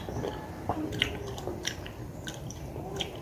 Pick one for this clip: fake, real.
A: fake